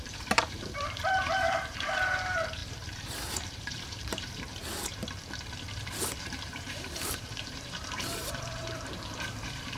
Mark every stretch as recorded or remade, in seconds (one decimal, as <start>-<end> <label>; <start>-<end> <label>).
0.0-4.5 remade; 4.5-6.2 recorded; 6.2-9.8 remade